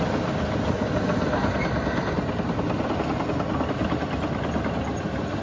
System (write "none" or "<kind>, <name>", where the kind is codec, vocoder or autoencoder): none